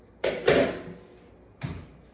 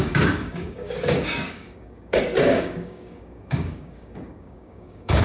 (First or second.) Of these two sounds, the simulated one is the second